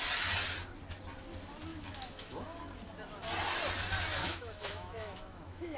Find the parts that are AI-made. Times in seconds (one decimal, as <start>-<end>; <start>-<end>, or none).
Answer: 1.7-2.6; 4.2-5.8